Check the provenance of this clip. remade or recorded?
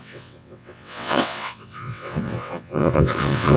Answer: remade